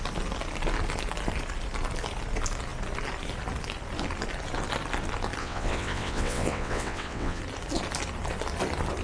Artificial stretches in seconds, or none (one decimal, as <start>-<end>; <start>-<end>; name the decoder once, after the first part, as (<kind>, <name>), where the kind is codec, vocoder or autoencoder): 5.4-7.4 (vocoder, WaveNeXt)